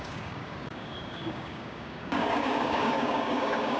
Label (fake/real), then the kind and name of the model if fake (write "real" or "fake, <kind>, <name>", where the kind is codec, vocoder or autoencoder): fake, codec, DAC